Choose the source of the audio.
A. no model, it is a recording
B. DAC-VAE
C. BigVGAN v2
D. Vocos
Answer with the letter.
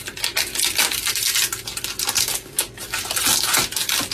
A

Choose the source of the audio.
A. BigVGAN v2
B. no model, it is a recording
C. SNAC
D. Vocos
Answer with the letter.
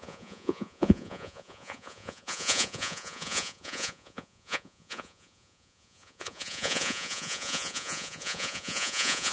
D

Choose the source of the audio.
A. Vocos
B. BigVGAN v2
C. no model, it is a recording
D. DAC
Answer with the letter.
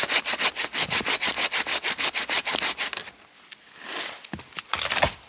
C